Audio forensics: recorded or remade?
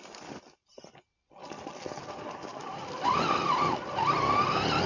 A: recorded